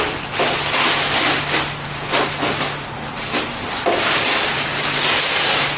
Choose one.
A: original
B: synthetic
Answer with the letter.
A